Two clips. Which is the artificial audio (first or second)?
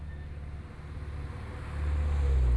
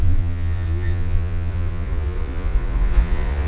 second